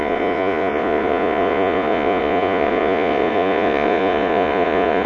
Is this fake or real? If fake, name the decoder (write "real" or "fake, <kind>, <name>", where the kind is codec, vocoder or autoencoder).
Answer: fake, vocoder, Vocos